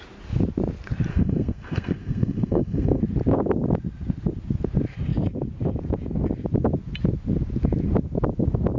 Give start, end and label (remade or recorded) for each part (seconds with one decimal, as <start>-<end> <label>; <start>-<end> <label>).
0.0-1.1 recorded; 1.1-3.0 remade; 3.0-8.8 recorded